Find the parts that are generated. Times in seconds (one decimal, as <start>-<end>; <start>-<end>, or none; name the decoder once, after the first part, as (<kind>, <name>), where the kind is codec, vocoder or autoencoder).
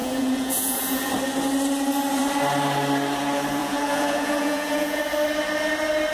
0.0-1.1 (vocoder, Vocos); 3.6-5.0